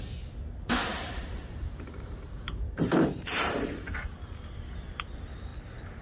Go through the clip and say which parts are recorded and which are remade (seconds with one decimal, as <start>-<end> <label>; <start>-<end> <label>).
0.0-0.9 recorded; 0.9-4.5 remade; 4.5-6.0 recorded